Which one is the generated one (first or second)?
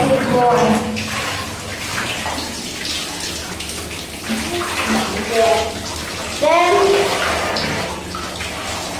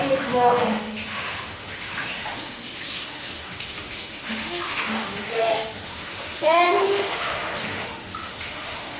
second